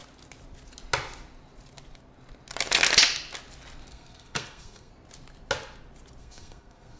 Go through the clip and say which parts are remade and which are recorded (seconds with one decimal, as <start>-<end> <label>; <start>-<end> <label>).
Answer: 0.0-3.9 recorded; 3.9-4.9 remade; 4.9-6.2 recorded; 6.2-7.0 remade